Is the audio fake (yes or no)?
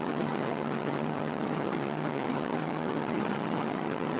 yes